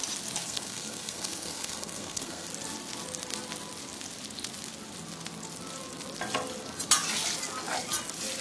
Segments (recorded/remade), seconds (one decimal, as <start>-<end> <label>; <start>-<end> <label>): 0.0-0.4 recorded; 0.4-2.5 remade; 2.5-8.4 recorded